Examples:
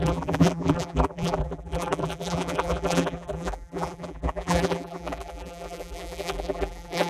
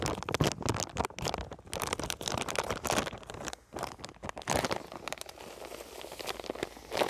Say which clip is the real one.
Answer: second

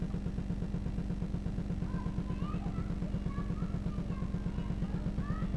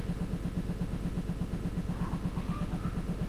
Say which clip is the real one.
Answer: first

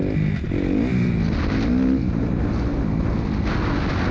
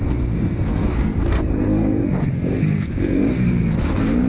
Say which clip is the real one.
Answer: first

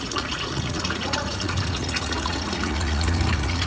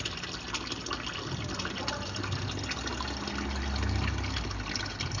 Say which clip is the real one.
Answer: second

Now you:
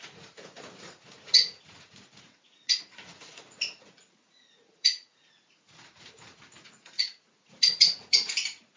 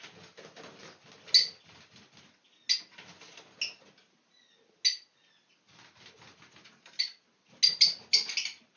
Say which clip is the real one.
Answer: second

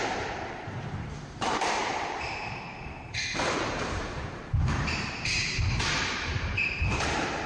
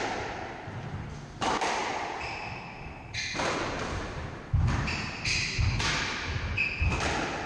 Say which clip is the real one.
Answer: second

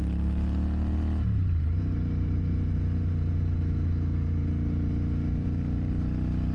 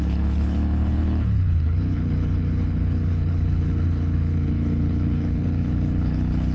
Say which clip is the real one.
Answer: first